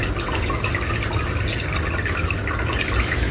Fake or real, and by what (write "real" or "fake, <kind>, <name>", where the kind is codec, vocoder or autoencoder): real